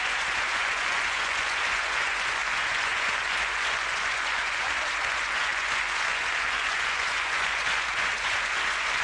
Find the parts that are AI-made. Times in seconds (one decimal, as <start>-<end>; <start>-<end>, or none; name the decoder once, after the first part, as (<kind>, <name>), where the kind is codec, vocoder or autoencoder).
0.0-9.0 (vocoder, Vocos)